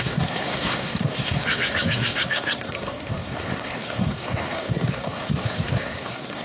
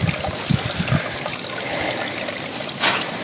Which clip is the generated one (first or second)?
first